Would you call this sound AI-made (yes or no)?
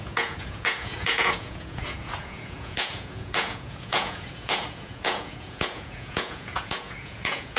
yes